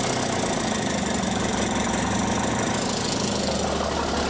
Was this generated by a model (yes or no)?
no